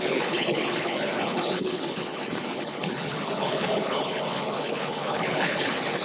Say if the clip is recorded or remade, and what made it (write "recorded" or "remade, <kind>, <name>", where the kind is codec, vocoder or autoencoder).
remade, codec, HILCodec